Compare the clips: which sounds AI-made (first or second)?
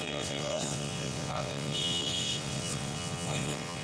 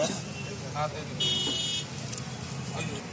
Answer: first